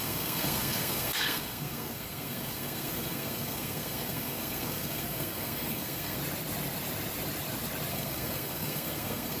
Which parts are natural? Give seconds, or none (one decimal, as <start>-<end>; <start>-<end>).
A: 6.2-7.9